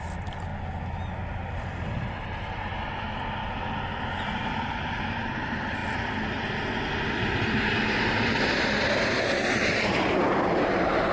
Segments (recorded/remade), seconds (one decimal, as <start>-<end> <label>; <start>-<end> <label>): 0.0-0.5 remade; 0.5-1.6 recorded; 1.6-2.7 remade; 2.7-4.9 recorded; 4.9-5.8 remade; 5.8-7.9 recorded; 7.9-11.1 remade